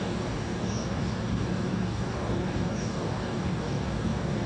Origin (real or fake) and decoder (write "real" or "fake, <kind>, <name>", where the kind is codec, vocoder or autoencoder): fake, codec, DAC